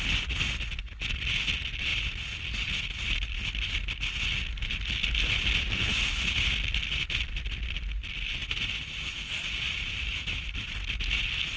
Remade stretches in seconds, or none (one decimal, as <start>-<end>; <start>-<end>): none